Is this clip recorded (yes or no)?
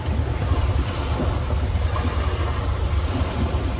yes